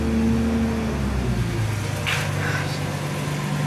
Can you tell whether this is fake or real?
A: real